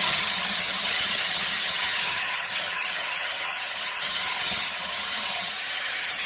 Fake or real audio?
fake